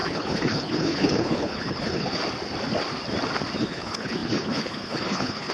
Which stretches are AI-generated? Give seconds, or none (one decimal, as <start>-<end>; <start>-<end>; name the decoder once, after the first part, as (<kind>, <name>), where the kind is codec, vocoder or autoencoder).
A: 0.0-2.2 (codec, HILCodec); 3.6-5.5